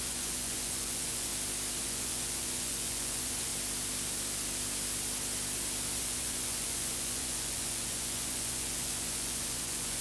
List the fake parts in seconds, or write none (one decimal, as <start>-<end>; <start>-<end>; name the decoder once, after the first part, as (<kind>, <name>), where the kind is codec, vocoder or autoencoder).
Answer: 0.0-1.3 (vocoder, Vocos); 1.8-3.5; 6.0-10.0